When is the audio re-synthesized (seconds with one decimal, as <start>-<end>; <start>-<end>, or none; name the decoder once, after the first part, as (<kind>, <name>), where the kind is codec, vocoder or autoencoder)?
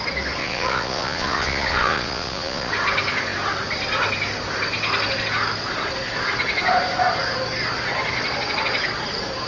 0.4-2.7 (vocoder, Vocos)